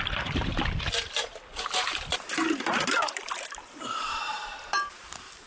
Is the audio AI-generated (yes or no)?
yes